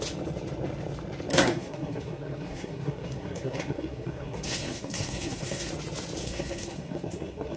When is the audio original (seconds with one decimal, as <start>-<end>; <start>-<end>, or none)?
0.0-1.3; 5.7-6.2